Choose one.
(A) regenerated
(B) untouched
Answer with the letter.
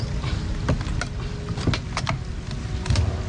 B